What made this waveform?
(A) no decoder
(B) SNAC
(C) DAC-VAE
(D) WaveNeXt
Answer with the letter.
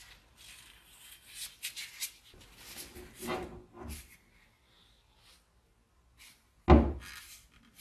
A